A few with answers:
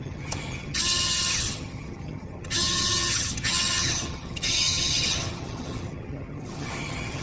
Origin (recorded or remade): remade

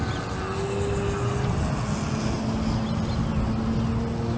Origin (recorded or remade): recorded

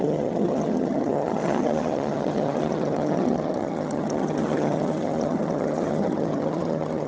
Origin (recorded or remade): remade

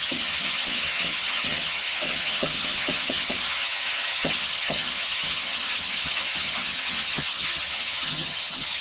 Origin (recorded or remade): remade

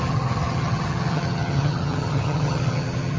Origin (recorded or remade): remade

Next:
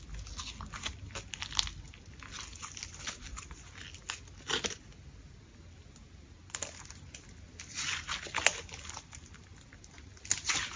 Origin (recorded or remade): recorded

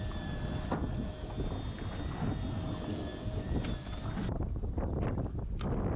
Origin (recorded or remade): recorded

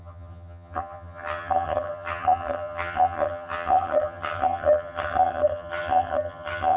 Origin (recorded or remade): remade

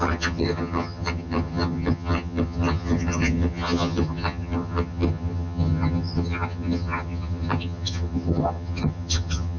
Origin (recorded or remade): remade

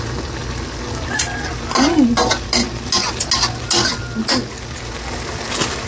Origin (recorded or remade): recorded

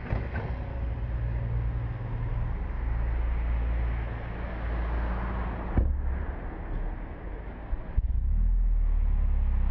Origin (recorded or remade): recorded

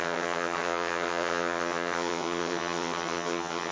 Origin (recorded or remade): remade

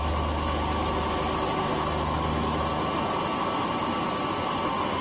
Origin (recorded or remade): recorded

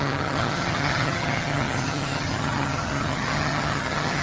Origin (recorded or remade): remade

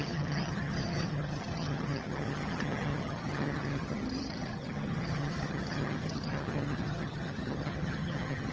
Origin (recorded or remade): remade